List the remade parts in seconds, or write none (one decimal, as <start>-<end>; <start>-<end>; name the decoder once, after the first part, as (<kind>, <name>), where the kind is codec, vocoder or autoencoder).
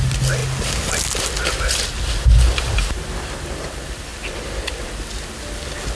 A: none